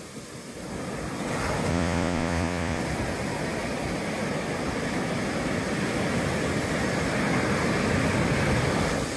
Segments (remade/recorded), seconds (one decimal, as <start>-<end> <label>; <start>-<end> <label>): 0.0-1.7 recorded; 1.7-2.8 remade; 2.8-9.2 recorded